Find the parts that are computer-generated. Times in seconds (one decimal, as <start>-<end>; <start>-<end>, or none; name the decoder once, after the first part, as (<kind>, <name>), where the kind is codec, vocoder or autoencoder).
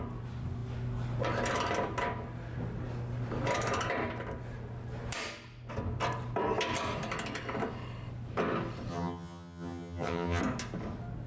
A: 8.9-10.4 (vocoder, HiFi-GAN)